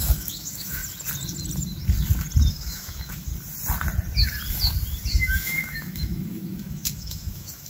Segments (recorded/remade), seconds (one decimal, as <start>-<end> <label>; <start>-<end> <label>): 0.0-0.8 remade; 0.8-2.5 recorded; 2.5-3.3 remade; 3.3-5.2 recorded; 5.2-7.7 remade